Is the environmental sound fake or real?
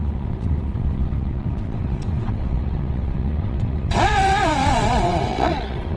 fake